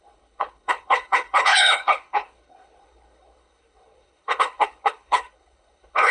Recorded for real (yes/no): no